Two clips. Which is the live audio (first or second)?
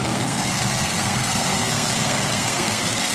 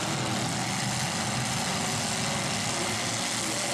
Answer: second